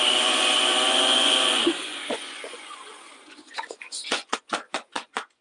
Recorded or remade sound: remade